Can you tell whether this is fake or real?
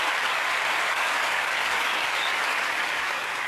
fake